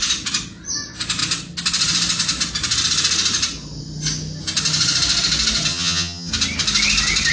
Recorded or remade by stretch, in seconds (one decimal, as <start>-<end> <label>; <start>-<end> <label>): 0.0-5.7 recorded; 5.7-6.3 remade; 6.3-7.3 recorded